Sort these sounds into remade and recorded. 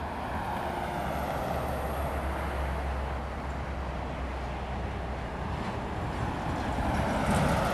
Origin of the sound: recorded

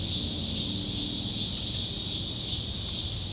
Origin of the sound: recorded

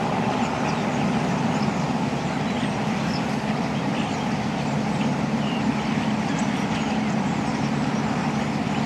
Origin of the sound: recorded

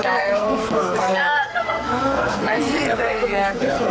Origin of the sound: remade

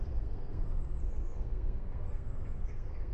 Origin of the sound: remade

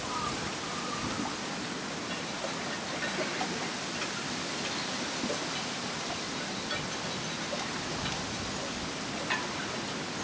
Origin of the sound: recorded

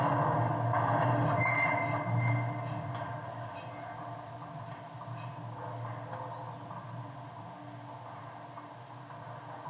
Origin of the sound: recorded